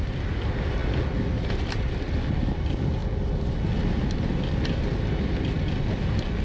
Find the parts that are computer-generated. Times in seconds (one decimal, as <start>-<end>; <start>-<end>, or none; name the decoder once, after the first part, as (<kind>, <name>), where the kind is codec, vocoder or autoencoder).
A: none